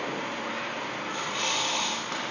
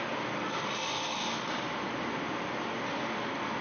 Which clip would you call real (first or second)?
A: first